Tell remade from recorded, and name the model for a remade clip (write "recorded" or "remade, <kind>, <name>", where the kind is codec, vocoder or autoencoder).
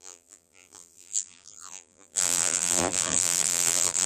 remade, vocoder, BigVGAN v2